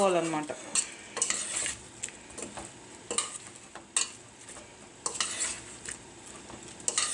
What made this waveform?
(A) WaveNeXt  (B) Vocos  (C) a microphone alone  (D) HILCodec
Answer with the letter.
C